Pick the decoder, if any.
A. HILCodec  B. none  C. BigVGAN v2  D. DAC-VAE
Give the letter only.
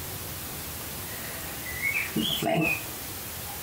B